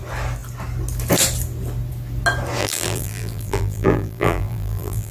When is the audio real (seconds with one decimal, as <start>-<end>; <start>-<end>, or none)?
0.0-2.6